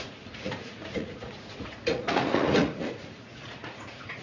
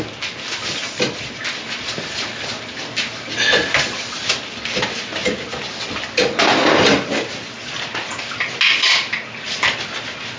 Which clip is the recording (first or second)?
second